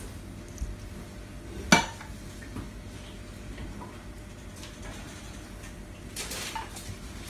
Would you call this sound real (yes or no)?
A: yes